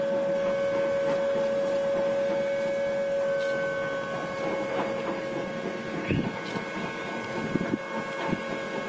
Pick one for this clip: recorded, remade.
recorded